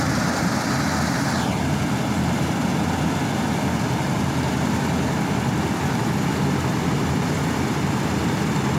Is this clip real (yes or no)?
no